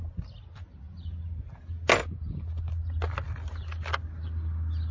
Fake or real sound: real